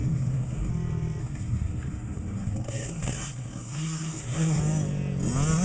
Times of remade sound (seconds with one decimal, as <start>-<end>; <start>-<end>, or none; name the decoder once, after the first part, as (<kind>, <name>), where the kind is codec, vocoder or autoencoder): 0.0-0.7 (codec, SNAC); 1.2-4.6